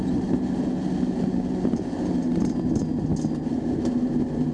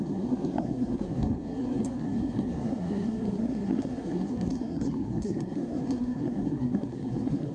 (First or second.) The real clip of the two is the first